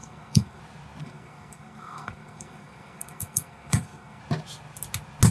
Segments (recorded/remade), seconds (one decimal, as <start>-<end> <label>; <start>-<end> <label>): 0.0-0.6 remade; 0.6-1.0 recorded; 1.0-4.2 remade; 4.2-5.3 recorded